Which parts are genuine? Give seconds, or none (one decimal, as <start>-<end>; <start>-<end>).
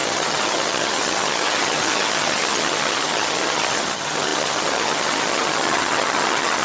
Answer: none